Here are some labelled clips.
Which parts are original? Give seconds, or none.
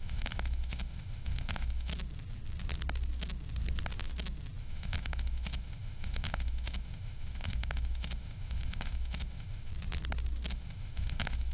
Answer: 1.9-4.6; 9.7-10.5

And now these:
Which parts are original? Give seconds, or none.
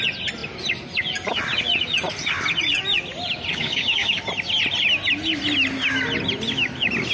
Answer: 0.0-3.5; 4.2-7.1